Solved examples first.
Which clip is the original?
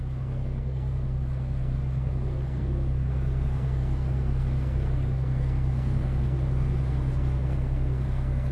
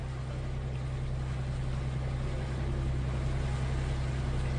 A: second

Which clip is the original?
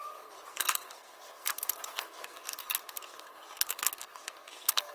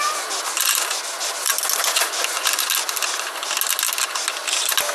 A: second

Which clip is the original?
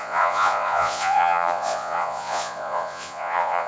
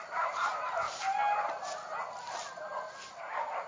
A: second